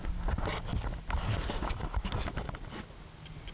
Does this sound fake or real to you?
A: real